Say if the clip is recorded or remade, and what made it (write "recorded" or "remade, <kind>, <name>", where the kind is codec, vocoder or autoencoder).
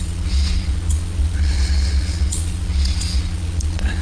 remade, vocoder, Vocos